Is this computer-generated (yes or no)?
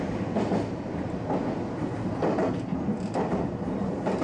no